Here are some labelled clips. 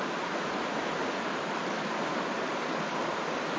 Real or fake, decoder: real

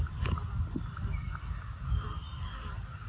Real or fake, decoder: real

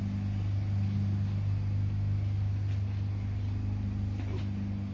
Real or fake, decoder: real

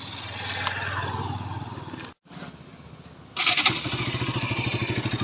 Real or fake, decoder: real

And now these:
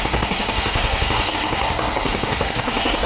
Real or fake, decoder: fake, codec, SNAC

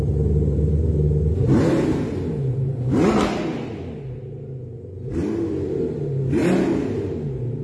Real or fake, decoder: real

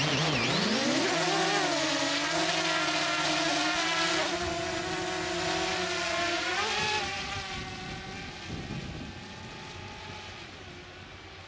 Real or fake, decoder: real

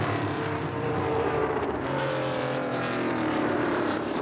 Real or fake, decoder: fake, vocoder, BigVGAN v2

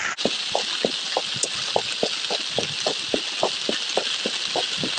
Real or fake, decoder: real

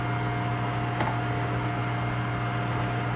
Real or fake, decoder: real